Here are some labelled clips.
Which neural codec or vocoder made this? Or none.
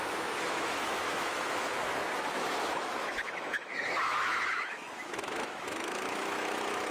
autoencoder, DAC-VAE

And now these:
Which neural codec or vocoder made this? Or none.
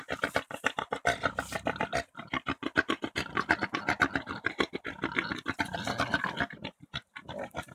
none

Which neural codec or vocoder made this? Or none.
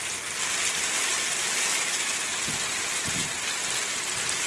none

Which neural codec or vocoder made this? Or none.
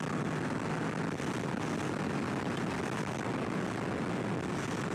none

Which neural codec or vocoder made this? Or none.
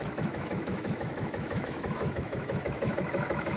autoencoder, DAC-VAE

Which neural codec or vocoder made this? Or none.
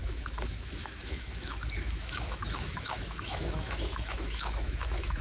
autoencoder, DAC-VAE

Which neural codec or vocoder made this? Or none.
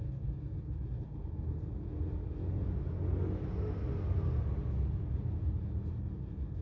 none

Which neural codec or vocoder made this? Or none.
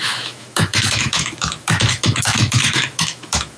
autoencoder, DAC-VAE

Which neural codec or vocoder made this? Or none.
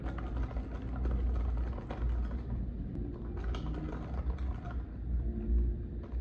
none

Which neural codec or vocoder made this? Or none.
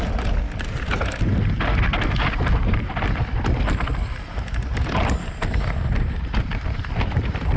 none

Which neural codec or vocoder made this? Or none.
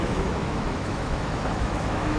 autoencoder, DAC-VAE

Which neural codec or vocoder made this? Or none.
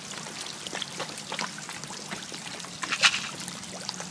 none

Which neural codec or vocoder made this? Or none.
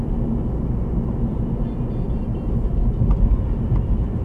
none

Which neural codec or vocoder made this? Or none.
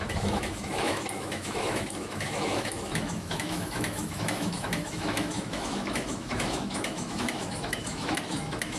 autoencoder, DAC-VAE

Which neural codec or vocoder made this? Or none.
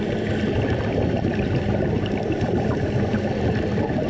none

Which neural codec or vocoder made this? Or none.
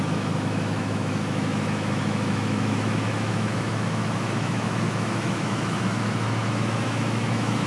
autoencoder, DAC-VAE